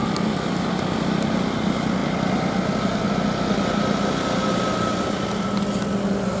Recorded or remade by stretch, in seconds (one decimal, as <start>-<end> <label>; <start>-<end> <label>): 0.0-6.4 recorded